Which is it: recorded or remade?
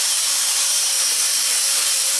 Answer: remade